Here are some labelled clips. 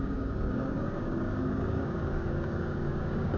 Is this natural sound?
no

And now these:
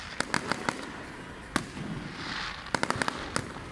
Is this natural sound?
yes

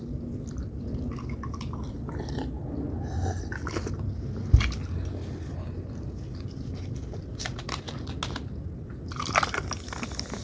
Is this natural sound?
yes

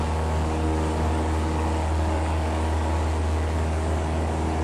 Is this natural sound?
no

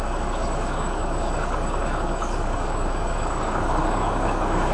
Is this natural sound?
no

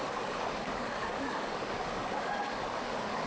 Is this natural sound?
no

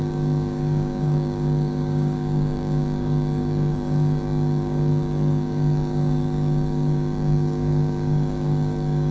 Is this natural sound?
no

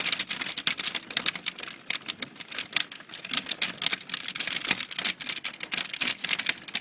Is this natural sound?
yes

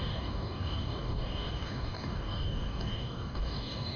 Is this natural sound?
no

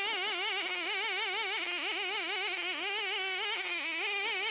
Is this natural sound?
yes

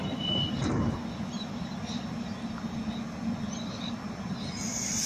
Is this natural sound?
yes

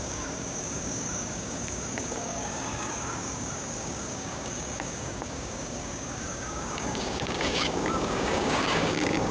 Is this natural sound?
no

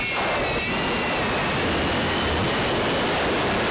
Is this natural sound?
yes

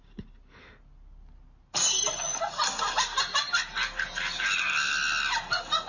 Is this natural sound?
yes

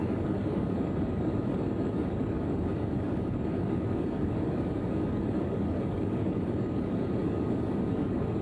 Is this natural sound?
no